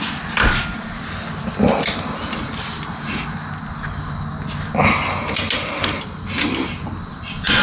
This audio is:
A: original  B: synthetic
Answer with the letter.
A